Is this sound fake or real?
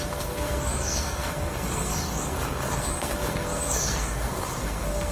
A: fake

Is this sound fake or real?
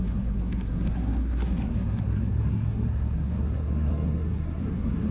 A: fake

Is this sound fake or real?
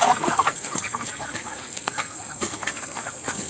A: fake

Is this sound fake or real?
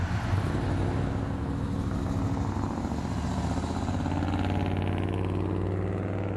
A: real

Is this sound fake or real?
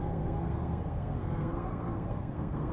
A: fake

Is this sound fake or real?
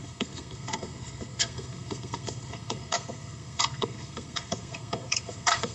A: fake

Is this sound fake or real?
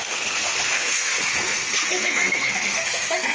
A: fake